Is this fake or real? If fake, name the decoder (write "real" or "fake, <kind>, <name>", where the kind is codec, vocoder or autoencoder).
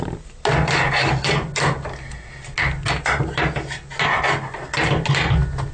real